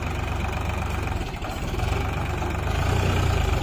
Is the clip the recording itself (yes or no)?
no